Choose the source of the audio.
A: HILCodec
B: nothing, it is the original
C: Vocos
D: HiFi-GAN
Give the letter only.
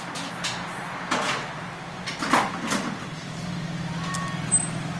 B